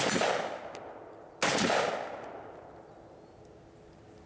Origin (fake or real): real